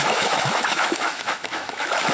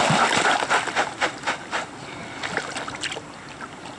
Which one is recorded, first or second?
second